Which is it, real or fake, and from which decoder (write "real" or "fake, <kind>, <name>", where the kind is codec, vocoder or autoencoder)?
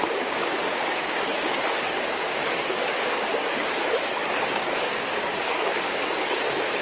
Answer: fake, codec, DAC